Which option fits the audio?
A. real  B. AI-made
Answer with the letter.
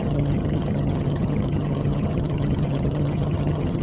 B